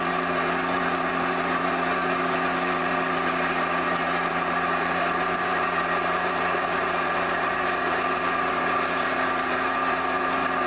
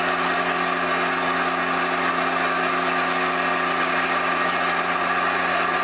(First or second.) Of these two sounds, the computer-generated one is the first